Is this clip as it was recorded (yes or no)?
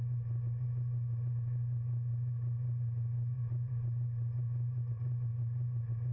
yes